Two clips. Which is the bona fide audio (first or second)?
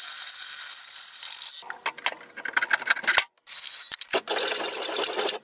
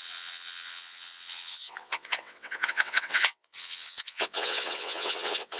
first